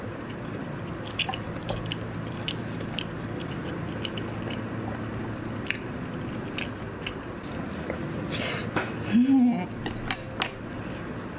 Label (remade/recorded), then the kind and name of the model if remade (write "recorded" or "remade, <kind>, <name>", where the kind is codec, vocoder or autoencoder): recorded